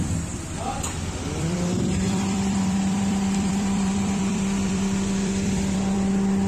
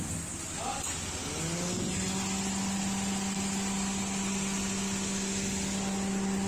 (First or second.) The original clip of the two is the second